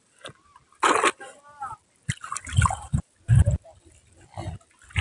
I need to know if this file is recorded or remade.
recorded